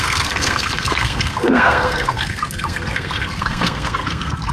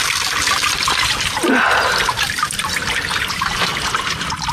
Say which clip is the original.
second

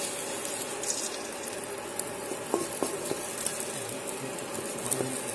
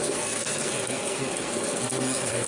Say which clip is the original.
first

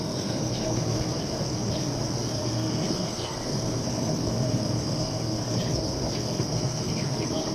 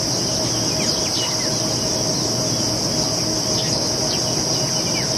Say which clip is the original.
second